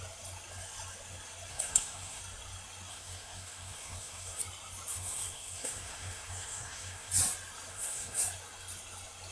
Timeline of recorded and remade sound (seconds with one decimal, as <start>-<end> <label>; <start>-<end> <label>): 0.0-1.5 recorded; 1.5-2.2 remade; 2.2-2.9 recorded; 2.9-4.4 remade; 4.4-4.9 recorded; 4.9-7.1 remade; 7.1-7.7 recorded; 7.7-8.2 remade; 8.2-9.3 recorded